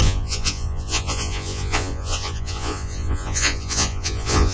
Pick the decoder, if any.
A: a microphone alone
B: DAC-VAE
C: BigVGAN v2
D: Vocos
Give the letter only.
D